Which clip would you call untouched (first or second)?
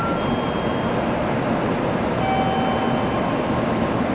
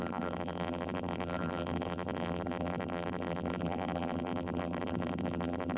first